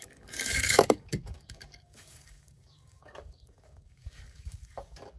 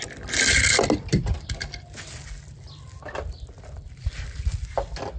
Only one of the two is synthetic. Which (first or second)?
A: first